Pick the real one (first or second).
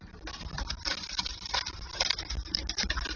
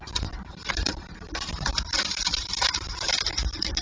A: first